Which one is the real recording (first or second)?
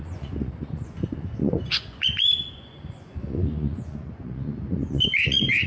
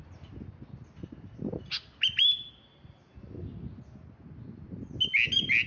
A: second